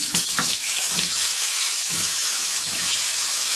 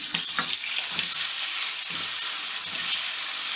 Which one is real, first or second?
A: second